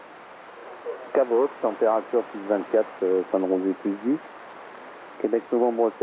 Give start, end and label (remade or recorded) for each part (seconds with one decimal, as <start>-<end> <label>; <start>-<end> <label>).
0.0-6.0 recorded